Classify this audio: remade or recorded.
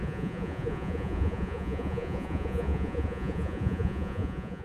remade